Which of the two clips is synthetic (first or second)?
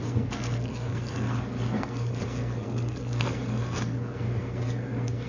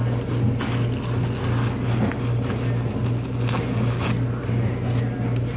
first